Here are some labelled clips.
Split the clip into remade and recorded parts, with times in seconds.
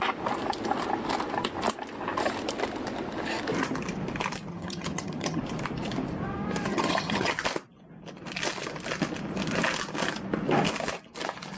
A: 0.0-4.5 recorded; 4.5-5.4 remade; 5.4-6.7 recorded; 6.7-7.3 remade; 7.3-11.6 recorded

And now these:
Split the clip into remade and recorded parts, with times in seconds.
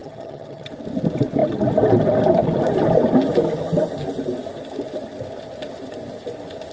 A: 0.0-0.7 remade; 0.7-6.7 recorded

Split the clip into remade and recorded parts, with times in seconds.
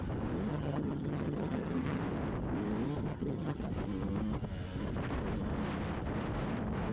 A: 0.0-0.5 recorded; 0.5-2.0 remade; 2.0-3.1 recorded; 3.1-3.7 remade; 3.7-6.9 recorded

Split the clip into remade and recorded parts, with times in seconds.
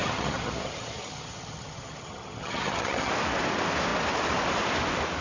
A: 0.0-3.1 remade; 3.1-5.2 recorded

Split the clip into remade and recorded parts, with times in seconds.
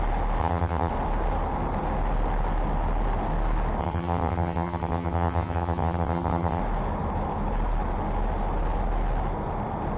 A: 0.0-0.4 recorded; 0.4-0.9 remade; 0.9-3.8 recorded; 3.8-6.6 remade; 6.6-10.0 recorded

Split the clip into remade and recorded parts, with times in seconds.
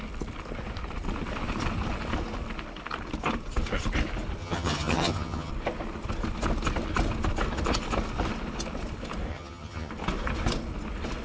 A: 0.0-4.4 recorded; 4.4-5.5 remade; 5.5-9.3 recorded; 9.3-9.9 remade; 9.9-11.2 recorded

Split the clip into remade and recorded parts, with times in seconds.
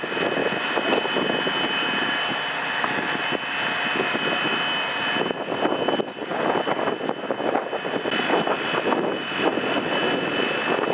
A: 0.0-10.9 recorded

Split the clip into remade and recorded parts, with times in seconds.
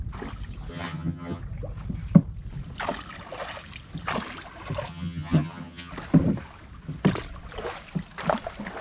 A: 0.0-0.7 recorded; 0.7-1.4 remade; 1.4-4.9 recorded; 4.9-5.9 remade; 5.9-8.8 recorded